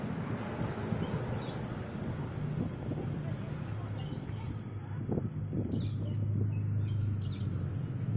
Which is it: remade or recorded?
recorded